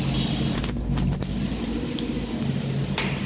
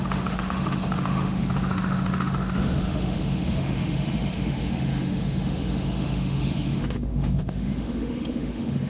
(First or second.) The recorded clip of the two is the first